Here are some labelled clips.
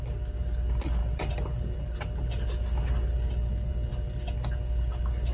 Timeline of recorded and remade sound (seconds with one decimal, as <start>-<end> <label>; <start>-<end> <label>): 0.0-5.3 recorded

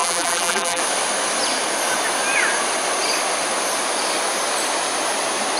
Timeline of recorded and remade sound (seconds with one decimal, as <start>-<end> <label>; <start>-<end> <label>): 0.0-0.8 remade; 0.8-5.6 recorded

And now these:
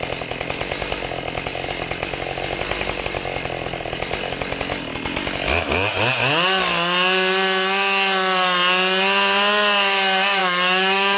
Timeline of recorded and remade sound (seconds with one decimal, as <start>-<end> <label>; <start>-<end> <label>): 0.0-10.4 recorded; 10.4-11.2 remade

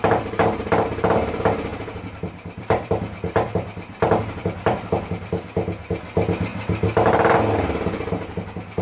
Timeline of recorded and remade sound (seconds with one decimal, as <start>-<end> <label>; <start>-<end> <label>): 0.0-1.7 recorded; 1.7-5.9 remade; 5.9-8.8 recorded

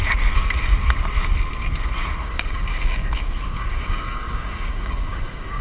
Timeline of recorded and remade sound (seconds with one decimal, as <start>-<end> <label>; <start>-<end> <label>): 0.0-2.2 recorded; 2.2-5.6 remade